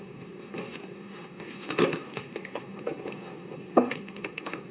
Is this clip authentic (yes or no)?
no